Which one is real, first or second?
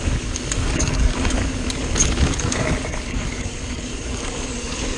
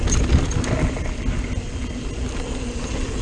second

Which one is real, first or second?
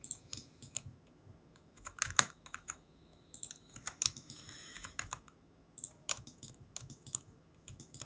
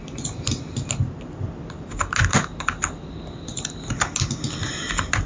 second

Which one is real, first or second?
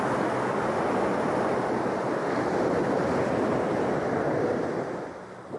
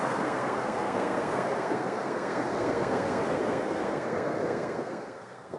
first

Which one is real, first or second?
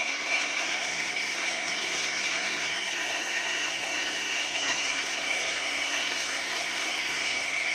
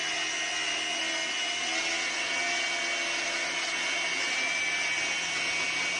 second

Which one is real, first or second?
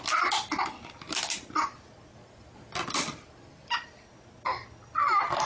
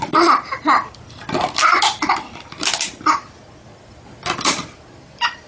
first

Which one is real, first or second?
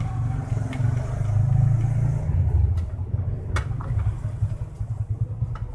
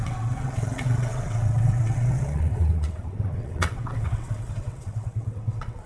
first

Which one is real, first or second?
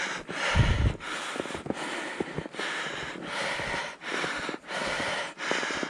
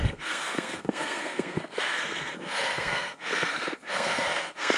first